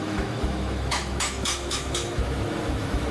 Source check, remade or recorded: remade